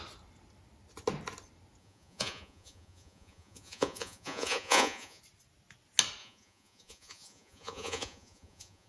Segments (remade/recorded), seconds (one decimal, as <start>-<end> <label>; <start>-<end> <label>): 0.0-1.8 recorded; 1.8-5.2 remade; 5.2-6.2 recorded; 6.2-8.9 remade